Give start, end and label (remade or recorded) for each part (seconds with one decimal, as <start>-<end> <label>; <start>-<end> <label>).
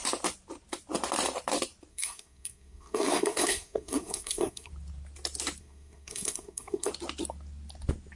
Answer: 0.0-1.9 recorded; 1.9-4.7 remade; 4.7-5.6 recorded; 5.6-6.9 remade; 6.9-8.2 recorded